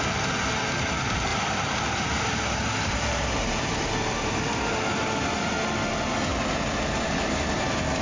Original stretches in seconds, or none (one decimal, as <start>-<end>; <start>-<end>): 0.0-1.3; 3.7-6.3; 7.3-8.0